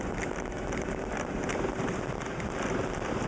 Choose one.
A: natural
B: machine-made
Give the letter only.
A